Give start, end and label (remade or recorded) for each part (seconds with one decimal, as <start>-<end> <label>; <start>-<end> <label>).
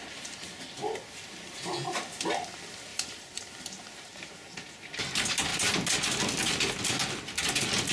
0.0-2.9 recorded; 2.9-3.4 remade; 3.4-7.9 recorded